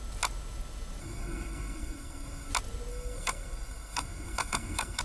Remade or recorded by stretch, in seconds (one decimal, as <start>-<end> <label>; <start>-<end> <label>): 0.0-1.0 recorded; 1.0-2.5 remade; 2.5-2.9 recorded; 2.9-5.0 remade